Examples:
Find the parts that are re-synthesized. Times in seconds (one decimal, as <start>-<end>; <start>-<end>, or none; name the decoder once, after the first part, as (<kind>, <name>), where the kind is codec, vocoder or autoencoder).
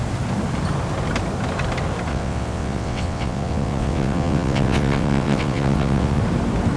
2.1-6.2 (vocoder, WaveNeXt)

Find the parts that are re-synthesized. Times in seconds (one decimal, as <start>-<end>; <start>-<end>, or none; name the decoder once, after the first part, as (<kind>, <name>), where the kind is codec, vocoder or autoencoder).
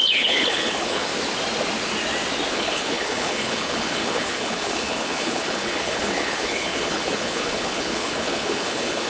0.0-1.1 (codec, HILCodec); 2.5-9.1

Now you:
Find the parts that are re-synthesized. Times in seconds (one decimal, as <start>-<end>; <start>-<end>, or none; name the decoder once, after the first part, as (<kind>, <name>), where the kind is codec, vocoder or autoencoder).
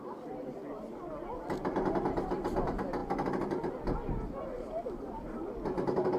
none